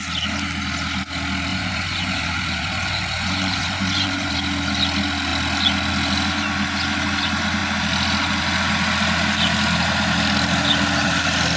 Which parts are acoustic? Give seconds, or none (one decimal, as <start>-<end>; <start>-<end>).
0.0-1.5; 4.3-11.6